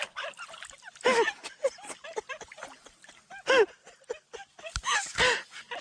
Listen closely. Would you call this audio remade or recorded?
recorded